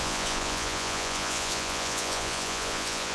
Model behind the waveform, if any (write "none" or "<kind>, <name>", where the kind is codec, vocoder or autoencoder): vocoder, Vocos